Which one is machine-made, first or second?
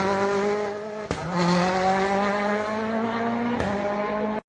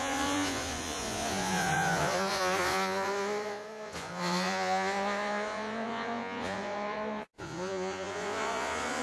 second